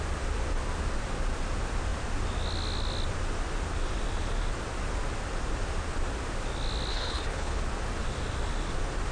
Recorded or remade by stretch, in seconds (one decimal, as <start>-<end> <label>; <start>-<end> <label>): 0.0-6.9 recorded; 6.9-7.6 remade; 7.6-9.1 recorded